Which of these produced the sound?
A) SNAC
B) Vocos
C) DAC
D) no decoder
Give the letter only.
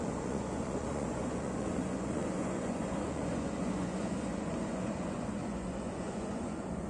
B